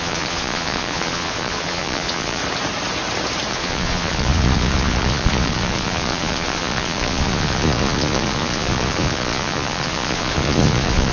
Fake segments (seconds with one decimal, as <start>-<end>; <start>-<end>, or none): 0.0-2.4; 3.5-11.1